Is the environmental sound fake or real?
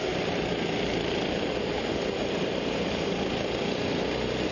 fake